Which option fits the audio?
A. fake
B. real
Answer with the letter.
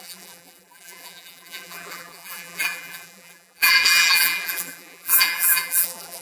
A